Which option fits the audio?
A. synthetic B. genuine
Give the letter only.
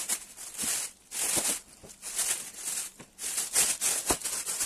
B